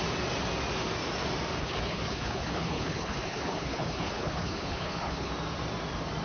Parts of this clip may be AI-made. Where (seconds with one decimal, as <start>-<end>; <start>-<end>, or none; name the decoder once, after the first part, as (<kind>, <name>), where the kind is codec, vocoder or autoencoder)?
1.6-5.3 (codec, HILCodec)